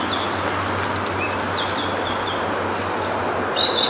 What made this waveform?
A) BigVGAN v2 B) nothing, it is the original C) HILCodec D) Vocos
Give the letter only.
B